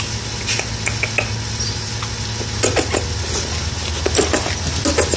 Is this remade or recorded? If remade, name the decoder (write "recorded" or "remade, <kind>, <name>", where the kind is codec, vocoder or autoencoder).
recorded